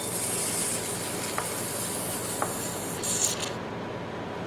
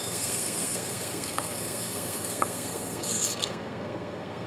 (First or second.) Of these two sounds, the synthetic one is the second